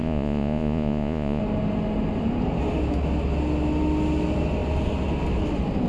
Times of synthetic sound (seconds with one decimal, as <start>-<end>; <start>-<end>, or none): 0.0-1.4